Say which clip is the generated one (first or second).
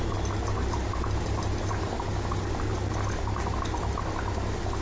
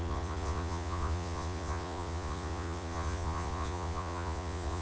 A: second